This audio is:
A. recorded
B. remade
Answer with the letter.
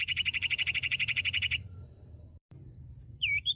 B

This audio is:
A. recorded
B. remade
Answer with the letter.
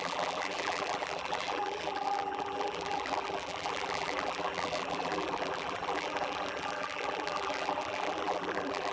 B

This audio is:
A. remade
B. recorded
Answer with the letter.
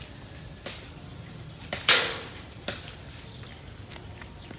B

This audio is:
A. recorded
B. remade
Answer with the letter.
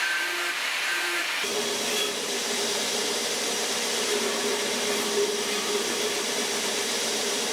B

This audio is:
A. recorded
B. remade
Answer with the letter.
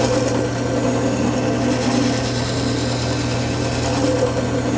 A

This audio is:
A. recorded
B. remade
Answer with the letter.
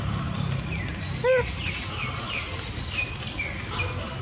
A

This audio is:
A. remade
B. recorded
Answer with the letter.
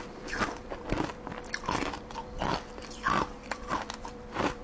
A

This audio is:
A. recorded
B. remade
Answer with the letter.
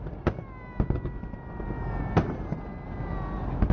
A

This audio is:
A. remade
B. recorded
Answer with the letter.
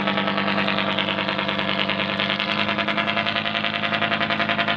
B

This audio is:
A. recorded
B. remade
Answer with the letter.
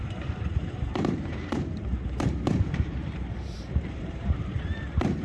B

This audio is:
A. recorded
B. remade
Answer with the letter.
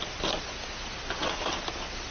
A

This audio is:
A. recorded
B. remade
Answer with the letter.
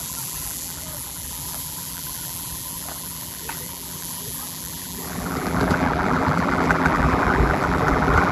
B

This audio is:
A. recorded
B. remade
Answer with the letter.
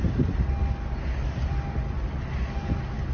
A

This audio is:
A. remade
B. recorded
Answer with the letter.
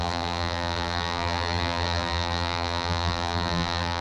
A